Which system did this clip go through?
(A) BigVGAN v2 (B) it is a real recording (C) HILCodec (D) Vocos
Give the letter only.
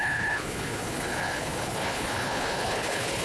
C